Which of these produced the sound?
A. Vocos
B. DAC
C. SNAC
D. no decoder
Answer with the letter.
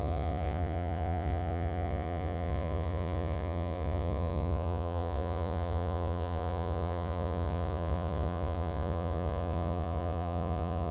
A